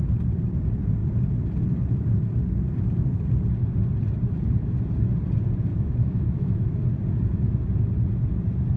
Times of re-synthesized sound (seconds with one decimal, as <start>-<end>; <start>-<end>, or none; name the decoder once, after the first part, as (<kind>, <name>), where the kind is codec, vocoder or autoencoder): 5.7-6.8 (autoencoder, DAC-VAE)